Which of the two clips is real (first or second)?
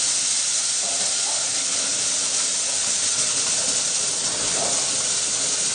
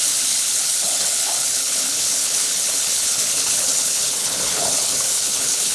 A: first